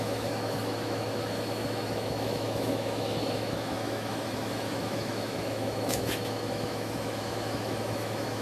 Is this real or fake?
fake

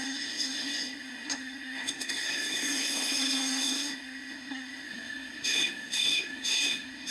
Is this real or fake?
fake